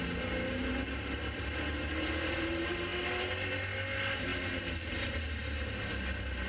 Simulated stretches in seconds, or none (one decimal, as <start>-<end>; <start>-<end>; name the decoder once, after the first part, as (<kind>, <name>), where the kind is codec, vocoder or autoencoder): none